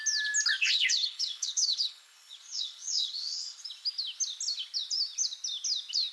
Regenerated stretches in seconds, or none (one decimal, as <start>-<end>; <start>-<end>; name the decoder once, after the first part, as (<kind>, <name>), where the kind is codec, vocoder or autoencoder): 0.6-3.6 (codec, HILCodec)

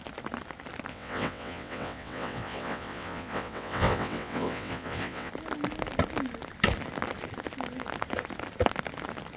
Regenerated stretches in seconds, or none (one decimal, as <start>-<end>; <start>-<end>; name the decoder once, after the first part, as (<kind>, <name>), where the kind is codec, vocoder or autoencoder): 0.9-5.3 (vocoder, WaveNeXt)

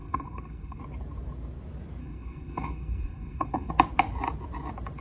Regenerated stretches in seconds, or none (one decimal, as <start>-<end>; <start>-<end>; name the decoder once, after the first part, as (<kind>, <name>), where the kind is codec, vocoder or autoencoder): 0.0-0.8 (codec, SNAC); 2.0-3.7

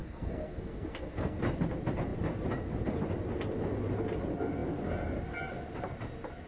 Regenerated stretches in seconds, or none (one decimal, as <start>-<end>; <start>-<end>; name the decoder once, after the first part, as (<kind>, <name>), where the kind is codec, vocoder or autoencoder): 0.0-1.4 (codec, SNAC)